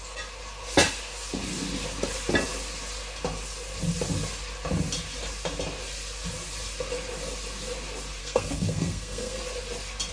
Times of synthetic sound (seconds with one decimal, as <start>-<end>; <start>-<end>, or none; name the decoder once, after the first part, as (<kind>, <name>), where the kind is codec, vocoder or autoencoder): 8.2-9.4 (codec, SNAC)